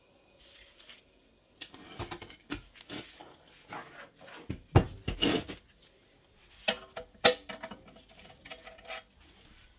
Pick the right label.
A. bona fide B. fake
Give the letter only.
A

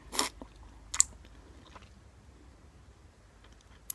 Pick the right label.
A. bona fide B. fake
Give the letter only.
A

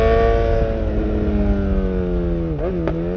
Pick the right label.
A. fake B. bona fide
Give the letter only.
B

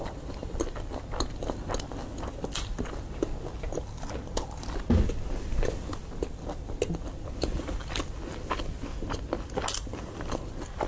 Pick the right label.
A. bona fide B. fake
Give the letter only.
A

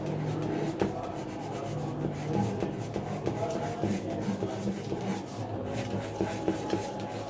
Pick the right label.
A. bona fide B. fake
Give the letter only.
A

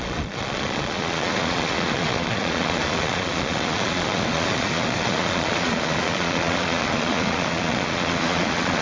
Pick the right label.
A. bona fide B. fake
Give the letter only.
B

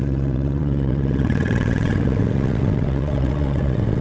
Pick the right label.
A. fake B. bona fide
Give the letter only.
A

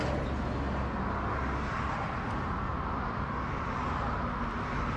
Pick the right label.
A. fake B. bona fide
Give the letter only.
B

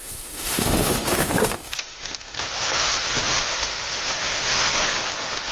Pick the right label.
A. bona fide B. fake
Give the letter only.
B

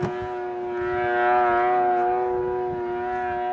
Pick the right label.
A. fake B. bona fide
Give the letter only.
B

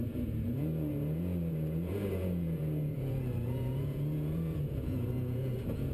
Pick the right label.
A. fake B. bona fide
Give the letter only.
A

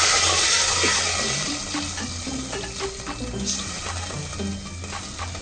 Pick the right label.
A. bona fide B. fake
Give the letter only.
A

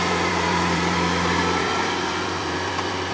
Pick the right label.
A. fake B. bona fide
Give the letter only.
A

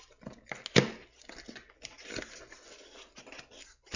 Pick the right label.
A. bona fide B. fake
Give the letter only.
A